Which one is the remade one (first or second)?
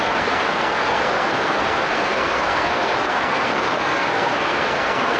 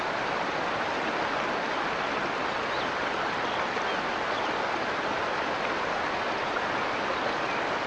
first